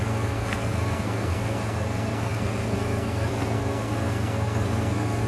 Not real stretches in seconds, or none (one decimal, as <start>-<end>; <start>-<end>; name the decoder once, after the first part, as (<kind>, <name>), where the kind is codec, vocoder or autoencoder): 0.0-5.3 (codec, SNAC)